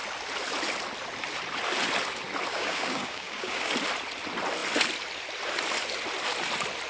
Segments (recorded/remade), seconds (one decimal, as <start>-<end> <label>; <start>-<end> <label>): 0.0-2.5 recorded; 2.5-3.7 remade; 3.7-6.9 recorded